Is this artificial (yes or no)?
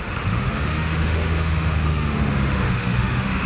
yes